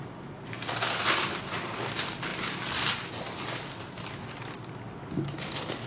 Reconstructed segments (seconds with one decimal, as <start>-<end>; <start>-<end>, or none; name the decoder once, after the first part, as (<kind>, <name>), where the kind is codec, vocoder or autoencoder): none